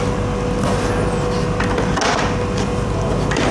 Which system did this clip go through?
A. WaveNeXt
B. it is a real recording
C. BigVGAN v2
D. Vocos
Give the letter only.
B